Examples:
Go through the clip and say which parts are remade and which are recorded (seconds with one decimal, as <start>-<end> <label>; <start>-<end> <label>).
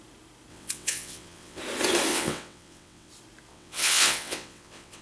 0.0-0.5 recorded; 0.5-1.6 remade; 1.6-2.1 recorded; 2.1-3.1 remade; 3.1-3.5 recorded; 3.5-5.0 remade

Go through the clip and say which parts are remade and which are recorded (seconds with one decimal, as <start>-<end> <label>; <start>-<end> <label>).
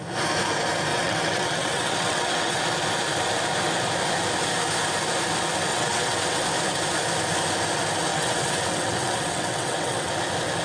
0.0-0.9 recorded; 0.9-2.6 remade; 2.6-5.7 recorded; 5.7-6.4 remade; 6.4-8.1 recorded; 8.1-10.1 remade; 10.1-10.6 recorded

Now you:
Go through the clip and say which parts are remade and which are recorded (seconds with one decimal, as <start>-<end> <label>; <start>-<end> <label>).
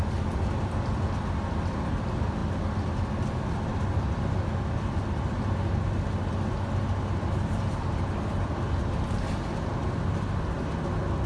0.0-11.3 recorded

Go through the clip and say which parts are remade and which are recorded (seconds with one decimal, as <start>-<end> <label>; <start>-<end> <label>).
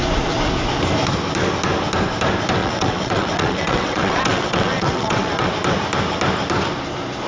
0.0-2.6 recorded; 2.6-5.5 remade; 5.5-7.3 recorded